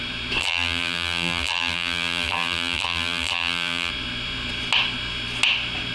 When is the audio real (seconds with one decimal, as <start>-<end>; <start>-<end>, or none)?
0.0-0.4; 3.9-5.9